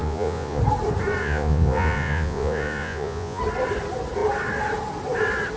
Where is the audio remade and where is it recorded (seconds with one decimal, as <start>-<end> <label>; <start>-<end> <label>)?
0.0-0.6 remade; 0.6-1.2 recorded; 1.2-3.4 remade; 3.4-5.6 recorded